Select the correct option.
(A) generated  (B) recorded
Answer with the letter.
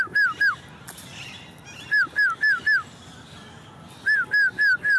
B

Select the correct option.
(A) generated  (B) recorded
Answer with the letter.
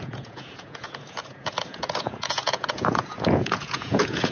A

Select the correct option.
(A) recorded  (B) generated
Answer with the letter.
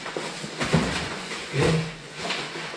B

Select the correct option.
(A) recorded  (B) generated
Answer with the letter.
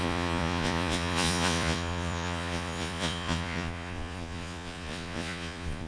B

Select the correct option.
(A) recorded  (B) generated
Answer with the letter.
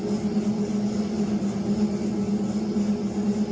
A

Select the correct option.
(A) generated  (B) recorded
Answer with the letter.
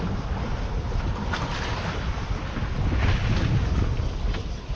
B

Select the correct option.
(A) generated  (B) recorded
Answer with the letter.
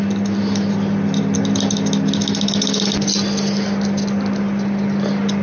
B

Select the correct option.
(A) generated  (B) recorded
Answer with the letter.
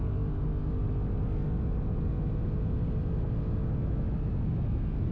B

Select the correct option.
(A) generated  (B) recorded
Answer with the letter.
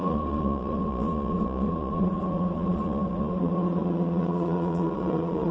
A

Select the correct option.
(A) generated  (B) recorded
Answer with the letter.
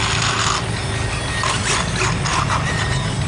B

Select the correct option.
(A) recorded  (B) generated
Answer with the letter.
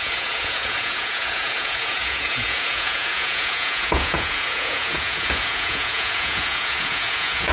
B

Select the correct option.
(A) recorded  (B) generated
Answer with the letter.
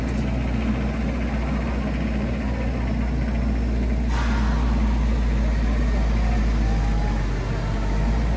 A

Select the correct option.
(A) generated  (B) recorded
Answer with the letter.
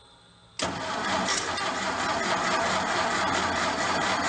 B